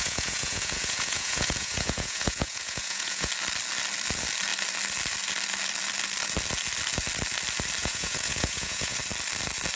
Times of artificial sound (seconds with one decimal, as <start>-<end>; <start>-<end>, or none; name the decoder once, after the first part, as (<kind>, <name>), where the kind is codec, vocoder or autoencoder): 0.0-3.3 (vocoder, Vocos); 7.8-9.0